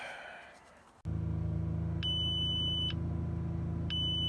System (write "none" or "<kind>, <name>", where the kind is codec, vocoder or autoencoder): none